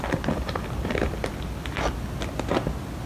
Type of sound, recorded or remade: recorded